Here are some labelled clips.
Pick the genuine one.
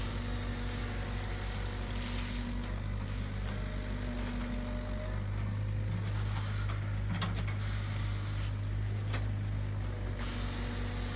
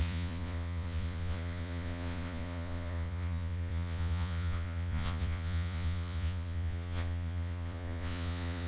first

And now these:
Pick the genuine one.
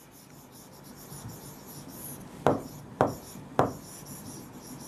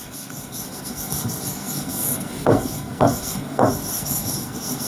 first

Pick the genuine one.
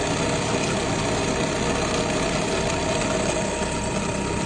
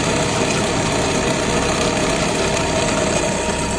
first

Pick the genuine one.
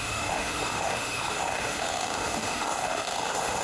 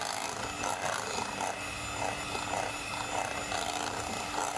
second